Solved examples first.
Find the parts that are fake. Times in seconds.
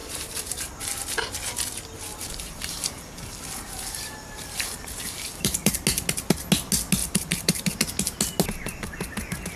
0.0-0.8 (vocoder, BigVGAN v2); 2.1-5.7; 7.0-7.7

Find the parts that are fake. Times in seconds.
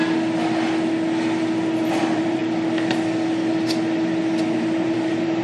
1.8-2.4 (vocoder, BigVGAN v2); 4.4-5.4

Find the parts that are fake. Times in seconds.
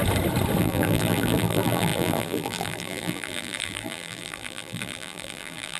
0.6-5.8 (vocoder, BigVGAN v2)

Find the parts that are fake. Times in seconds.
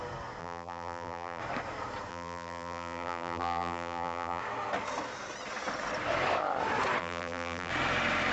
0.4-1.4 (vocoder, BigVGAN v2); 2.1-4.4; 7.0-7.7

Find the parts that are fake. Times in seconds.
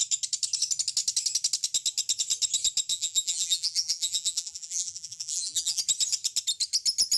2.9-5.8 (vocoder, BigVGAN v2)